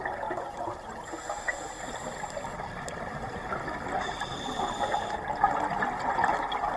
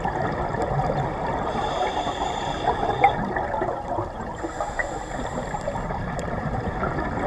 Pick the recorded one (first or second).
first